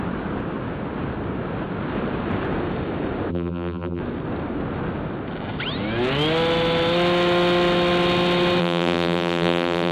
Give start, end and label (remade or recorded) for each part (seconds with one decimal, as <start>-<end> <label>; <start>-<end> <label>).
0.0-3.3 recorded; 3.3-4.0 remade; 4.0-8.6 recorded; 8.6-9.9 remade